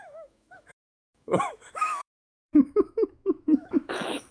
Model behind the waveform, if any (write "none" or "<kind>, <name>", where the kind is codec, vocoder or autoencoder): autoencoder, DAC-VAE